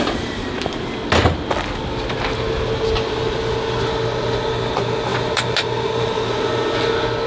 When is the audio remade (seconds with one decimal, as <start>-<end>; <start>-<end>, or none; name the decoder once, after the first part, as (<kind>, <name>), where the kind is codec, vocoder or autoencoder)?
5.1-6.4 (vocoder, BigVGAN v2)